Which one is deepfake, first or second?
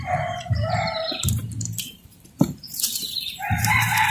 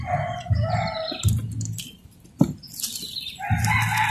first